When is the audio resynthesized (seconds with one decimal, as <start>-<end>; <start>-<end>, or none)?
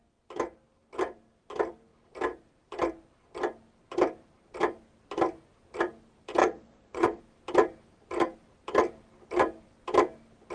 6.4-7.2